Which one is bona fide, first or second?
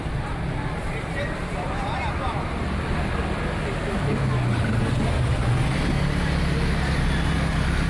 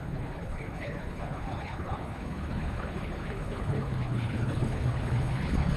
first